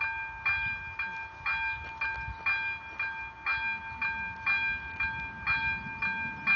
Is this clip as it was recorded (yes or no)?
yes